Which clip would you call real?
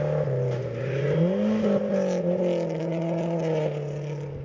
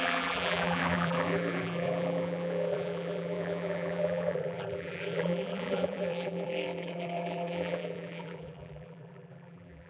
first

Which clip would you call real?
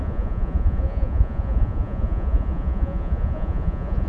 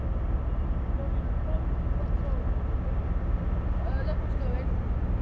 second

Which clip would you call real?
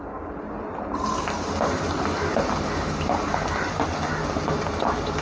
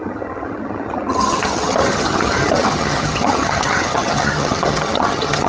first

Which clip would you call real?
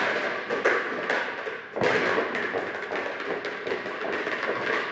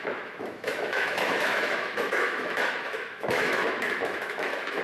first